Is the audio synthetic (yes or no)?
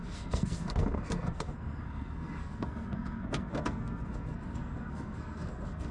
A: yes